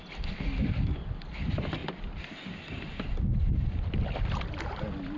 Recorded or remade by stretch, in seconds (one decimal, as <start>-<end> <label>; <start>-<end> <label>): 0.0-5.2 recorded

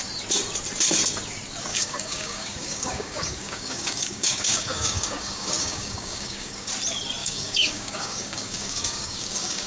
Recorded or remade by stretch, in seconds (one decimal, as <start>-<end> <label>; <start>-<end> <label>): 0.0-1.7 recorded; 1.7-6.7 remade; 6.7-7.2 recorded; 7.2-9.7 remade

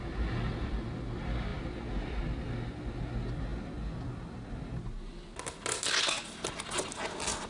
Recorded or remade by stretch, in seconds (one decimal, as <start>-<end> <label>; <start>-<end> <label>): 0.0-7.5 recorded